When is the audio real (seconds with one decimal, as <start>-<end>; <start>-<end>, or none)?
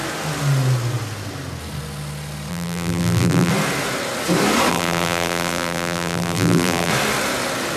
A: 0.0-2.5; 3.5-4.7; 6.9-7.8